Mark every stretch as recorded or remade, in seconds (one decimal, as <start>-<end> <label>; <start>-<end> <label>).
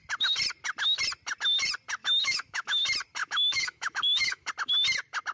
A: 0.0-2.0 recorded; 2.0-2.8 remade; 2.8-3.2 recorded; 3.2-4.5 remade; 4.5-5.3 recorded